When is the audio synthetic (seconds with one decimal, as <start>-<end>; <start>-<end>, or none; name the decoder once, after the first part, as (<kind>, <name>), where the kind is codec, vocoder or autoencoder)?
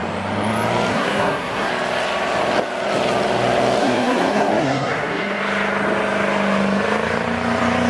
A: 0.9-1.7 (codec, SNAC); 3.8-5.4